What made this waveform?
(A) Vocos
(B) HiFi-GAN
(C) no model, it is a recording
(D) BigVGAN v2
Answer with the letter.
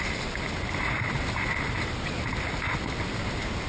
C